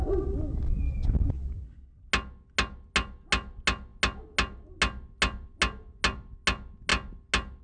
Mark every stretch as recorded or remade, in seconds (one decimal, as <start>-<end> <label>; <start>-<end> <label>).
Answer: 0.0-7.6 recorded